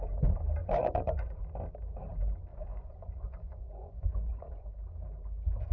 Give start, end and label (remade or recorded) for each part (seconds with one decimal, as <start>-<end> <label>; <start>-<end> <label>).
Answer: 0.0-0.6 recorded; 0.6-1.4 remade; 1.4-2.5 recorded; 2.5-4.6 remade; 4.6-5.7 recorded